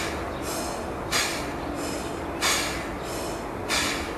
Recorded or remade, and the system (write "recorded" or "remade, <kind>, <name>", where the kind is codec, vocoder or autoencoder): recorded